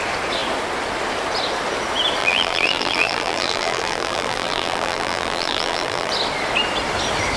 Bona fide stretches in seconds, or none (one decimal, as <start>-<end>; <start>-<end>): 0.0-2.2; 6.1-7.4